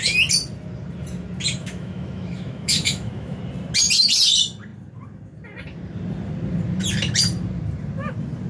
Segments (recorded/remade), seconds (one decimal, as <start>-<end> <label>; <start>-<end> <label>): 0.0-1.6 recorded; 1.6-3.4 remade; 3.4-8.5 recorded